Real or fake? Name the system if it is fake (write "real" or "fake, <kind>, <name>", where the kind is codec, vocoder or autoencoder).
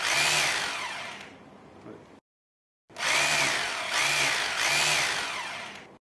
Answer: real